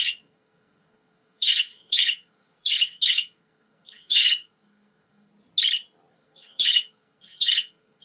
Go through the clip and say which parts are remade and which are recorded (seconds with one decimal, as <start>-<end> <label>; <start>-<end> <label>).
0.0-5.3 remade; 5.3-6.1 recorded; 6.1-8.0 remade